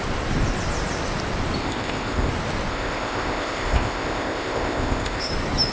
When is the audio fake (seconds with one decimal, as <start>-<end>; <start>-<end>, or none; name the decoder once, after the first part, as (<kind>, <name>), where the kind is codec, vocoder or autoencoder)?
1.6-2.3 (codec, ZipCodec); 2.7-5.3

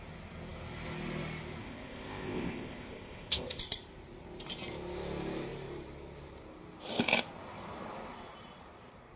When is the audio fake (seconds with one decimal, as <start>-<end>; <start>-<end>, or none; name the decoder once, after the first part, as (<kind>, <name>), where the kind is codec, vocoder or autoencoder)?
1.6-3.6 (codec, ZipCodec)

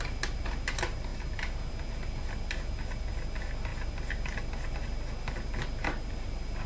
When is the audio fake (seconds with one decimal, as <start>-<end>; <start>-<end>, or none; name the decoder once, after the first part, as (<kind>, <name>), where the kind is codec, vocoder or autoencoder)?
none

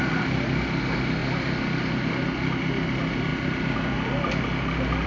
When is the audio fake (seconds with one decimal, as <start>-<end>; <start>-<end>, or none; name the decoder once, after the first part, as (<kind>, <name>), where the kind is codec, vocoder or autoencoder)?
none

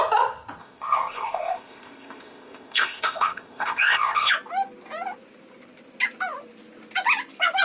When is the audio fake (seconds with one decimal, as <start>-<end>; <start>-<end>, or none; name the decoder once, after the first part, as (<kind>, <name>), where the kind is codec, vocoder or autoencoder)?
0.6-4.3 (codec, ZipCodec)

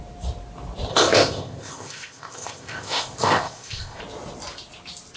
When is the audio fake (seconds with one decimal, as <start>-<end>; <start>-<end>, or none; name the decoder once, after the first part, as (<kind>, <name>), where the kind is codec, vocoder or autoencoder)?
0.9-4.0 (codec, ZipCodec)